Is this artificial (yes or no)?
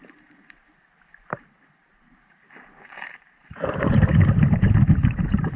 yes